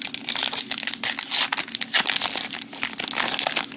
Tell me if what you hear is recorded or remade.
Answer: recorded